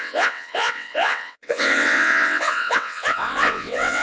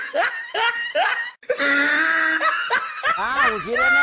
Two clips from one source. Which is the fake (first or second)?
first